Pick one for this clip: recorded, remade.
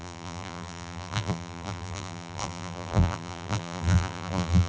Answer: remade